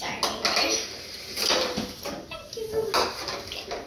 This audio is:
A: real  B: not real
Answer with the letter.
A